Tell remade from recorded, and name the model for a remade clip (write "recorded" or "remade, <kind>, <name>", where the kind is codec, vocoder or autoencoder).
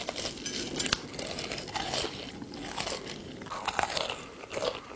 recorded